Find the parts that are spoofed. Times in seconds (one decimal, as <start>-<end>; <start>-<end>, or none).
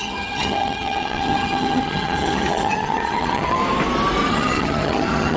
0.0-3.6; 4.3-5.4